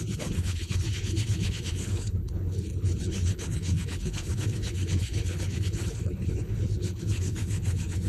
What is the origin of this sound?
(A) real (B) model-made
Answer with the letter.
B